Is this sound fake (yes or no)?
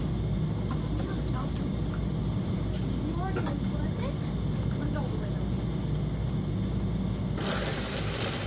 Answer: no